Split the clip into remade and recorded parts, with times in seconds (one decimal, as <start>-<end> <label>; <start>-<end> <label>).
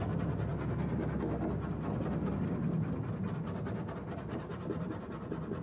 0.0-5.6 recorded